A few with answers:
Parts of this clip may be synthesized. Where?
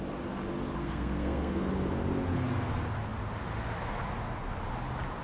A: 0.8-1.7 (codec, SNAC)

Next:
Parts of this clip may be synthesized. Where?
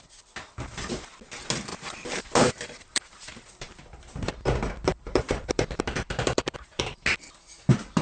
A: 1.7-4.3 (vocoder, BigVGAN v2); 4.9-6.9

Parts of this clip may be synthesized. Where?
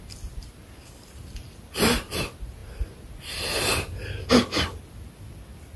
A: none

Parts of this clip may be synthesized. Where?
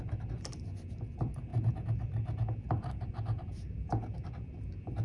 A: 0.0-1.5 (vocoder, BigVGAN v2); 2.7-5.0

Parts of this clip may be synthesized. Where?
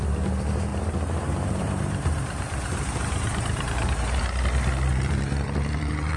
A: 0.7-4.2 (vocoder, BigVGAN v2); 4.9-6.2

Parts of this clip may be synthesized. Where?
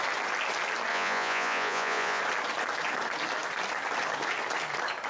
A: 0.9-2.2 (vocoder, Vocos)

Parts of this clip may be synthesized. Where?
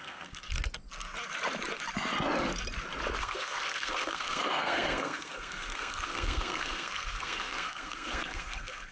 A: 0.0-0.5 (codec, SNAC); 3.2-8.9